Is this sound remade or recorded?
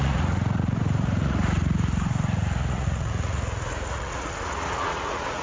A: remade